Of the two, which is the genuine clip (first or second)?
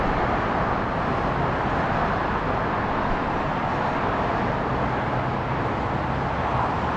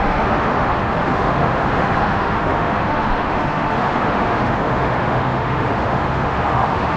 first